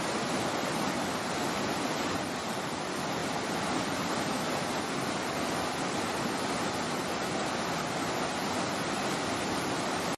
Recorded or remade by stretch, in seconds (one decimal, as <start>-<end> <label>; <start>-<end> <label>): 0.0-10.2 recorded